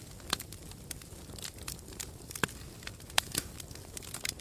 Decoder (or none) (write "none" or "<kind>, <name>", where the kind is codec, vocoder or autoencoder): vocoder, BigVGAN v2